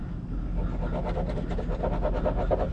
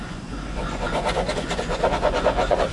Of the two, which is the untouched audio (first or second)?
first